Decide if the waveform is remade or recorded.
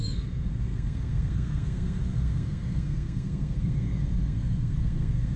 remade